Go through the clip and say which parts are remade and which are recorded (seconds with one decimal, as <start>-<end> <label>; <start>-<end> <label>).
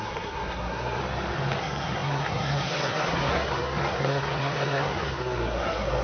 0.0-1.0 remade; 1.0-1.6 recorded; 1.6-6.0 remade